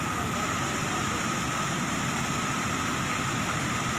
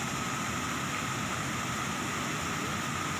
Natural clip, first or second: second